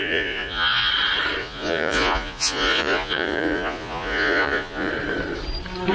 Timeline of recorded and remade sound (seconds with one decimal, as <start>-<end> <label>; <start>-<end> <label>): 0.0-0.9 remade; 0.9-1.4 recorded; 1.4-4.9 remade; 4.9-5.9 recorded